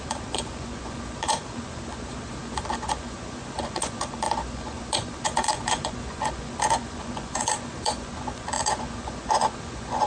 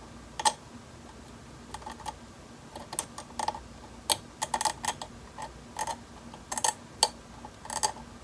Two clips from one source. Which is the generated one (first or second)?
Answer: first